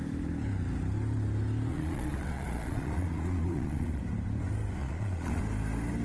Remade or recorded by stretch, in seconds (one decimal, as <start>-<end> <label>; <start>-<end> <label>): 0.0-1.7 recorded; 1.7-4.0 remade; 4.0-4.8 recorded; 4.8-5.4 remade; 5.4-6.0 recorded